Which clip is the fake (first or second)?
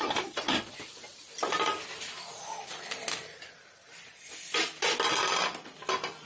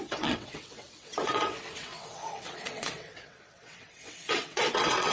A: second